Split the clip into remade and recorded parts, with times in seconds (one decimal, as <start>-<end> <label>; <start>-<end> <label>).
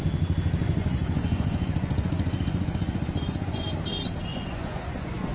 0.0-0.8 recorded; 0.8-3.6 remade; 3.6-4.3 recorded; 4.3-5.3 remade